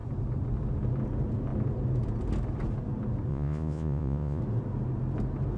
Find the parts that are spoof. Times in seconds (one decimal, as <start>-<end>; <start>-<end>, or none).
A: 3.3-4.4